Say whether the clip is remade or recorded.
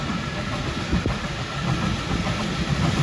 recorded